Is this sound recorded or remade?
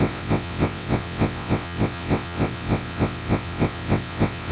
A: remade